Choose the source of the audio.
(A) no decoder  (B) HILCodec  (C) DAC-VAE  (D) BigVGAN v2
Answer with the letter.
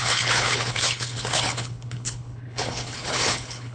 B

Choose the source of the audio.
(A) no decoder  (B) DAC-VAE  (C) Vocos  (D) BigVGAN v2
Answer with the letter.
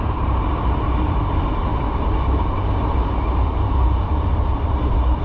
D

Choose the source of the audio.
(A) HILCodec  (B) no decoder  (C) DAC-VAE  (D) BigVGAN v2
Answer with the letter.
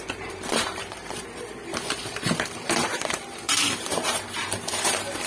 D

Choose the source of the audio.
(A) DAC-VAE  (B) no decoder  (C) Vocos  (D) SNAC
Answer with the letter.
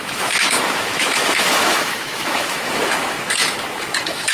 A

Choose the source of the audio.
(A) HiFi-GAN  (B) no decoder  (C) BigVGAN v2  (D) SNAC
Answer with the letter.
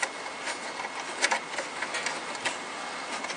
B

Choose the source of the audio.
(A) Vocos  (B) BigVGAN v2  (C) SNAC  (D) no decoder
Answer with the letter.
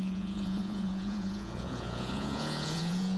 A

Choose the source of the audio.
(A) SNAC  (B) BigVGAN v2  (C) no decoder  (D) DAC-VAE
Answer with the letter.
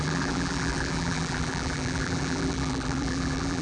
B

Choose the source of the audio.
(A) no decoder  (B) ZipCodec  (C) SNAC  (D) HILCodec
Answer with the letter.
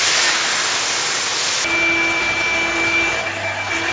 A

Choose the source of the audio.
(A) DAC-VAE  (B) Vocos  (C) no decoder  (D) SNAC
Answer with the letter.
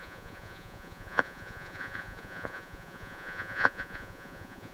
B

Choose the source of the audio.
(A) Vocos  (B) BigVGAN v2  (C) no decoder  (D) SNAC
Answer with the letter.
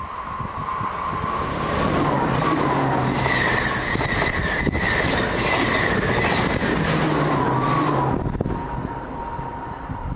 C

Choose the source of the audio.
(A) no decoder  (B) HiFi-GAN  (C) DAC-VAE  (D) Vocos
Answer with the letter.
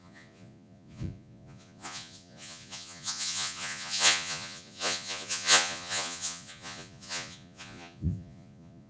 D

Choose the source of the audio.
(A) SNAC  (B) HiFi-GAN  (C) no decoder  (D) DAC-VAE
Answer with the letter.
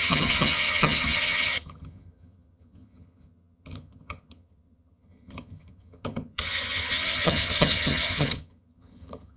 B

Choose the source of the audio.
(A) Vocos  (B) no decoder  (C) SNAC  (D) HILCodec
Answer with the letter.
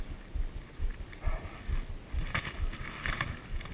B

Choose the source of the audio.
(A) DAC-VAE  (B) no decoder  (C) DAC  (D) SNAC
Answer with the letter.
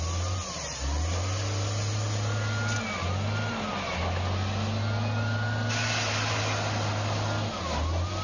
B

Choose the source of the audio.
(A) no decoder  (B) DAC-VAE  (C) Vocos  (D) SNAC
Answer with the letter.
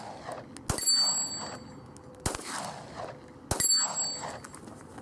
A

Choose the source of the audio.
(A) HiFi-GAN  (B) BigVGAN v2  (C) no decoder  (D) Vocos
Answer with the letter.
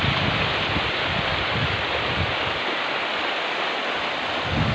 C